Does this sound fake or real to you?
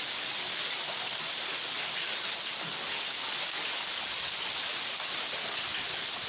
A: real